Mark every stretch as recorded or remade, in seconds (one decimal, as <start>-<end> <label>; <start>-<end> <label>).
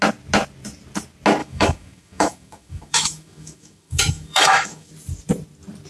0.0-1.4 recorded; 1.4-4.9 remade; 4.9-5.9 recorded